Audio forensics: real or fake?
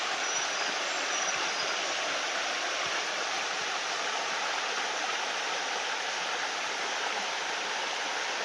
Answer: real